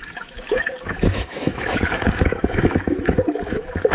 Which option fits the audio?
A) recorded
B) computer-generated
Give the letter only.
B